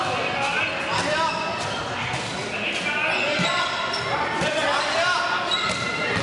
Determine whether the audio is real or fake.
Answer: real